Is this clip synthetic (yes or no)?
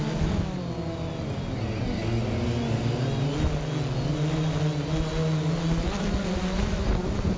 no